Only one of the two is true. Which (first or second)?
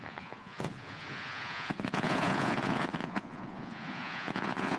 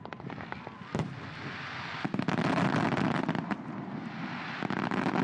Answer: second